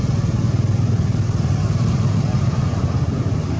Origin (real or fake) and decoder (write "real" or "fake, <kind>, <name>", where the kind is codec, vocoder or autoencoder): real